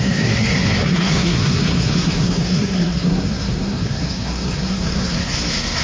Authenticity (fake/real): fake